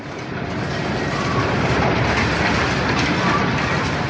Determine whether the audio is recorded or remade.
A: recorded